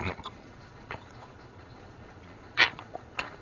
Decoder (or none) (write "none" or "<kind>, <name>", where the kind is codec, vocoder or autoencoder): vocoder, Vocos